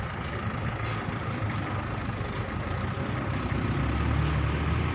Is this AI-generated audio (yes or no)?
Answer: no